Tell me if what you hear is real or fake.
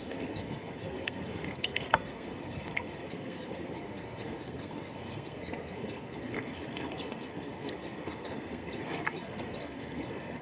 fake